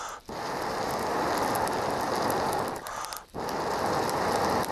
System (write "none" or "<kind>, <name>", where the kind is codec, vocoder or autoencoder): none